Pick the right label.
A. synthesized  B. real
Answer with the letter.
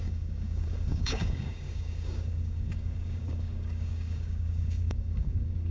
A